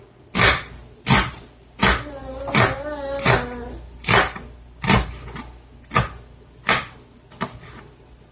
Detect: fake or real real